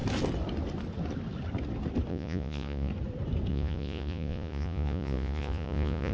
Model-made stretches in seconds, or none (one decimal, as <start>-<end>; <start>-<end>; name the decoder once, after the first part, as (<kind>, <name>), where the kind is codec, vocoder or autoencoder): 2.1-2.9 (vocoder, Vocos); 3.5-6.1